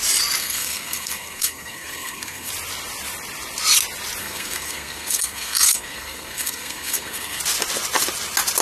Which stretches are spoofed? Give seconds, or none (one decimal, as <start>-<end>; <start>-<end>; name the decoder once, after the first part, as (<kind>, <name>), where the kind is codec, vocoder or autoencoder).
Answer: 0.4-2.5 (codec, SNAC); 4.2-7.4